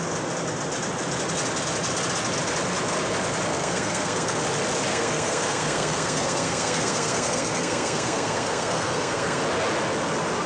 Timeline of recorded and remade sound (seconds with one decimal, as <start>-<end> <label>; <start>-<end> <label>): 0.0-3.5 recorded; 3.5-4.4 remade; 4.4-4.9 recorded; 4.9-9.4 remade; 9.4-10.5 recorded